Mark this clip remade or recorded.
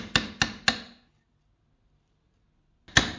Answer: recorded